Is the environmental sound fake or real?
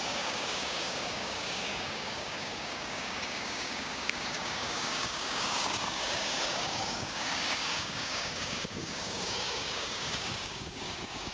fake